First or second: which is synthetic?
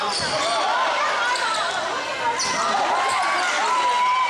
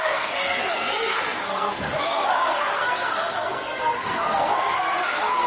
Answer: second